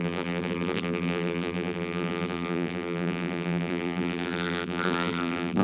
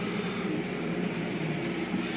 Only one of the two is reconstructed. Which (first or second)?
first